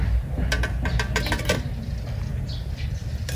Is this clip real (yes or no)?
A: yes